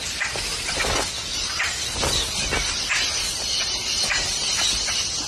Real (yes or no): yes